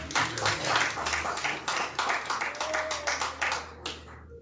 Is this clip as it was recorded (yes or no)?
yes